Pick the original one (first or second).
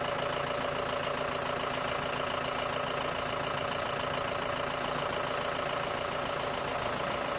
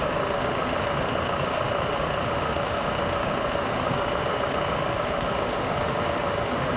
first